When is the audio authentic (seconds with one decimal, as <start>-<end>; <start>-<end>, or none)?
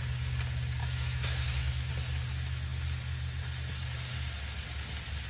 0.0-0.8; 1.9-5.3